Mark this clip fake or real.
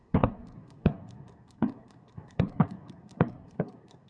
fake